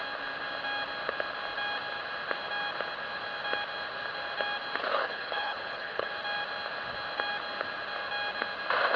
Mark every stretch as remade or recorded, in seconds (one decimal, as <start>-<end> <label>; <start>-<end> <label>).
0.0-4.9 recorded; 4.9-6.1 remade; 6.1-9.0 recorded